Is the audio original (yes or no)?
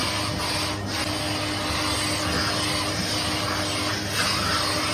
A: yes